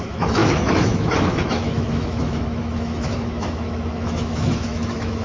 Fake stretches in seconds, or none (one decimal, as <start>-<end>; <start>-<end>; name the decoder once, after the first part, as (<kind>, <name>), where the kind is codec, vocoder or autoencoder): 0.0-5.2 (autoencoder, DAC-VAE)